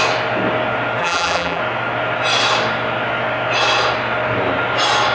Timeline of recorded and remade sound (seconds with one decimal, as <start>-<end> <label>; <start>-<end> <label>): 0.0-1.0 recorded; 1.0-1.6 remade; 1.6-5.1 recorded

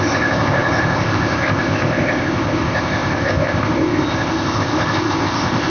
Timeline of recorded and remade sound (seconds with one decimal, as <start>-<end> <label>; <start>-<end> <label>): 0.0-5.7 remade

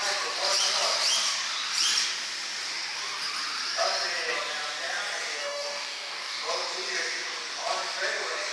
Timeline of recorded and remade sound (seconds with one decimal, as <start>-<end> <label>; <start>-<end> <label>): 0.0-5.4 recorded; 5.4-6.4 remade; 6.4-8.5 recorded

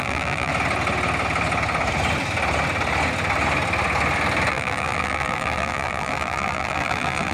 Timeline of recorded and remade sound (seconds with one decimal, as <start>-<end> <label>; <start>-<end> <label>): 0.0-0.5 remade; 0.5-4.5 recorded; 4.5-7.3 remade

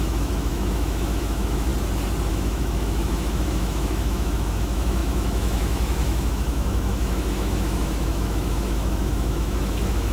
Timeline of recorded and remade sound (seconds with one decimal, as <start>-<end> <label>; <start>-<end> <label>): 0.0-1.7 remade; 1.7-2.3 recorded; 2.3-10.1 remade

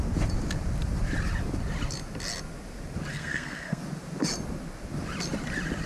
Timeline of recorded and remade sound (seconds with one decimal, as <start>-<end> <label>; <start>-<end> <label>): 0.0-3.1 recorded; 3.1-3.8 remade; 3.8-5.9 recorded